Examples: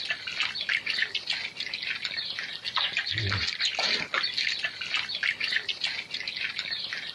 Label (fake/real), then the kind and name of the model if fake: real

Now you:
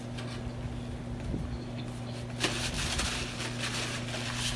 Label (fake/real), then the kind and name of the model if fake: real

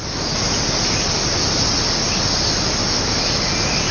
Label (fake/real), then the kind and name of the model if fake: real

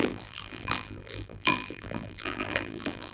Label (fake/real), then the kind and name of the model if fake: fake, vocoder, BigVGAN v2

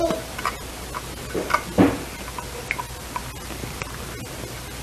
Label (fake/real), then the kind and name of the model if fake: real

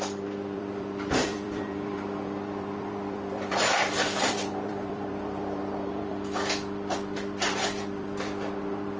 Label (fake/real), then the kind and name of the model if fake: fake, vocoder, BigVGAN v2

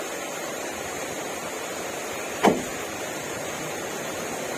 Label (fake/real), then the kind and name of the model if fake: real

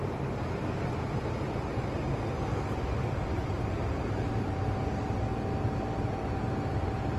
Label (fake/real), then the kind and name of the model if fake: fake, vocoder, BigVGAN v2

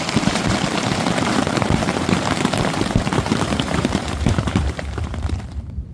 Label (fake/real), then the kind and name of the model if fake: fake, vocoder, BigVGAN v2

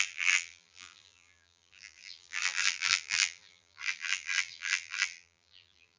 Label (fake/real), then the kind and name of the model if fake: fake, vocoder, BigVGAN v2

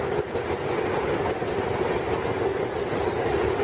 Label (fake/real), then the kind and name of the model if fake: real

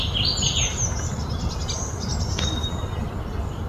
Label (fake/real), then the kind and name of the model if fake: real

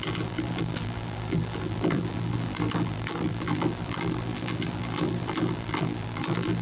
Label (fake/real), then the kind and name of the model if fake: fake, vocoder, BigVGAN v2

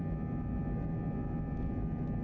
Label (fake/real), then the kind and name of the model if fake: real